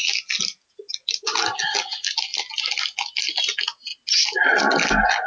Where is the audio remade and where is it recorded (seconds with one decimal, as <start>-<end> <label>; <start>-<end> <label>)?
0.0-5.3 recorded